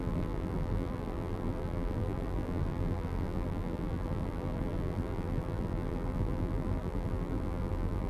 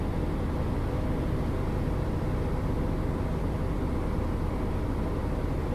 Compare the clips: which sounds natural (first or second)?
second